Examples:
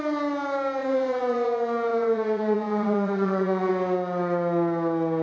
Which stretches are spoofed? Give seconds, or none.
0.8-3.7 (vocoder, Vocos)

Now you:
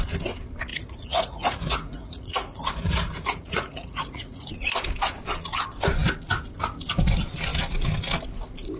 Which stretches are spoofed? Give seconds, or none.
0.7-4.5 (vocoder, Vocos)

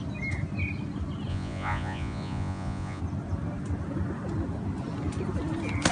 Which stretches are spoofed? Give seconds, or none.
1.3-3.0 (vocoder, Vocos)

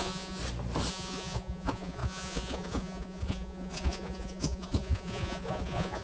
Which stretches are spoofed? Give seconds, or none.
0.0-0.4 (vocoder, Vocos); 0.9-6.0

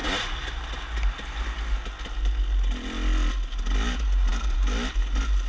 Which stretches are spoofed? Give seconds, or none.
none

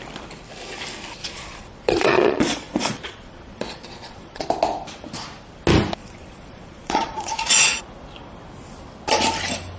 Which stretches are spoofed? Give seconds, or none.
1.2-4.5 (vocoder, Vocos); 6.0-7.9

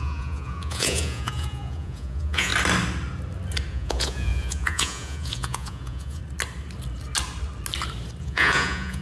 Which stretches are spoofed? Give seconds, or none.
0.0-2.5 (vocoder, Vocos); 3.7-6.2; 8.2-9.0

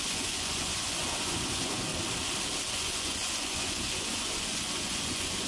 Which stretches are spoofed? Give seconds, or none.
0.0-1.9 (vocoder, Vocos); 2.7-5.5